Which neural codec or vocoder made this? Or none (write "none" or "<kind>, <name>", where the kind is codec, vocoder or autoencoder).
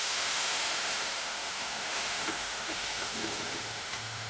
autoencoder, DAC-VAE